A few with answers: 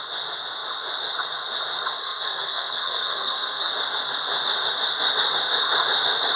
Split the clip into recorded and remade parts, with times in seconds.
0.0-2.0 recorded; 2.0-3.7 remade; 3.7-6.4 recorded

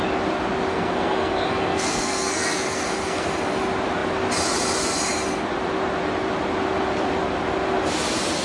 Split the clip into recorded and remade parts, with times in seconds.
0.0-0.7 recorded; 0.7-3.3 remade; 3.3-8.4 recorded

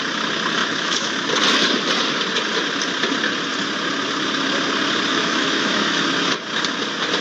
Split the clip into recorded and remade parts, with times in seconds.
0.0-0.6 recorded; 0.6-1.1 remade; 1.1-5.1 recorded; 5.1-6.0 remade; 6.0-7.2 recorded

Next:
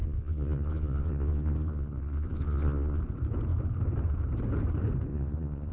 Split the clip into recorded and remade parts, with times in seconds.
0.0-3.0 remade; 3.0-5.1 recorded; 5.1-5.7 remade

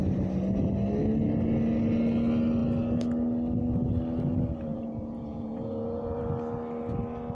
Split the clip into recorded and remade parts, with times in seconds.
0.0-4.7 recorded; 4.7-6.2 remade; 6.2-7.3 recorded

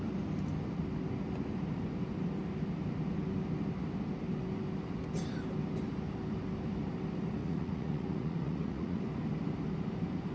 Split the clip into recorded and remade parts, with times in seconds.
0.0-7.4 recorded; 7.4-9.0 remade; 9.0-10.3 recorded

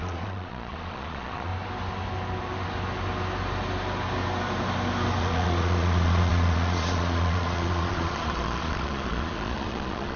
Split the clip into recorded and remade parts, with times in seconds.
0.0-1.5 remade; 1.5-5.2 recorded; 5.2-10.2 remade

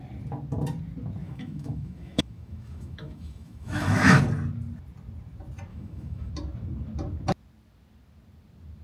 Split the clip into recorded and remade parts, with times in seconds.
0.0-1.2 recorded; 1.2-4.2 remade; 4.2-5.7 recorded; 5.7-6.3 remade; 6.3-8.8 recorded